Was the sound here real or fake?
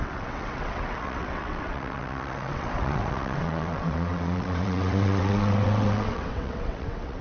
fake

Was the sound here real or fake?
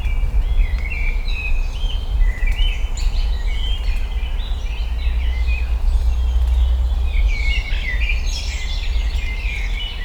real